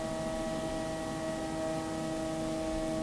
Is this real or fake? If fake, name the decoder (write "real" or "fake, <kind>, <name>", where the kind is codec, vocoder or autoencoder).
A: real